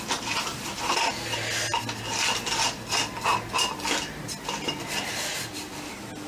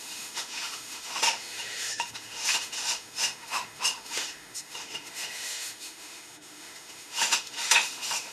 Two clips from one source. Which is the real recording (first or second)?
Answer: first